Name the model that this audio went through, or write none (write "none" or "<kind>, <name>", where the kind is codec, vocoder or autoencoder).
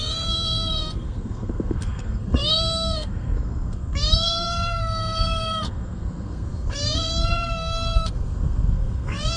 codec, SNAC